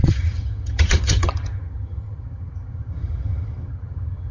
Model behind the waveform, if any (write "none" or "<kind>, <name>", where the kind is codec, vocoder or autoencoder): vocoder, HiFi-GAN